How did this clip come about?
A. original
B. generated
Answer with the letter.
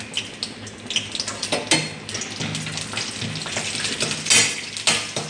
A